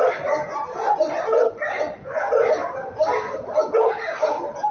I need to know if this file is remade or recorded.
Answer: recorded